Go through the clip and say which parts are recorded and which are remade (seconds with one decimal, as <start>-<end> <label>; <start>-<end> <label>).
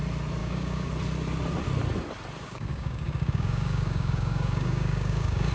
0.0-0.4 recorded; 0.4-0.9 remade; 0.9-2.4 recorded; 2.4-5.5 remade